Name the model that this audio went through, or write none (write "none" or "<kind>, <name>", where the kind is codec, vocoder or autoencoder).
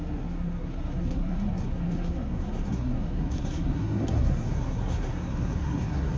codec, SNAC